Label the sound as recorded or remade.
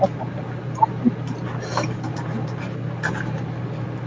recorded